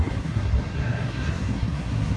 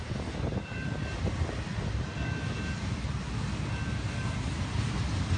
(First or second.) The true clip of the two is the second